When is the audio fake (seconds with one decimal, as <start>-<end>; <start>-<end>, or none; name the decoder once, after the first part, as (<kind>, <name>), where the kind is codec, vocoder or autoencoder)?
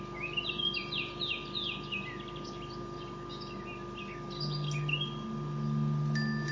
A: none